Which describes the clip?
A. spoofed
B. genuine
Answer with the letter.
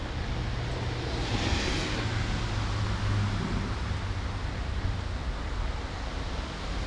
B